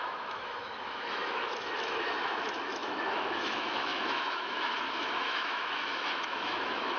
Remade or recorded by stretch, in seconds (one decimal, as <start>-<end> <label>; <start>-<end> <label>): 0.0-7.0 remade